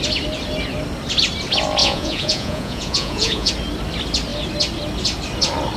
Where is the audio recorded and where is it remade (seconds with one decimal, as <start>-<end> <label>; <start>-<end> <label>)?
0.0-1.8 recorded; 1.8-3.5 remade; 3.5-5.8 recorded